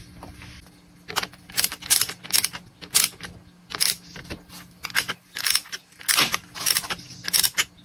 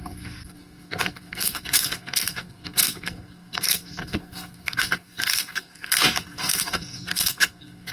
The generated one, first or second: second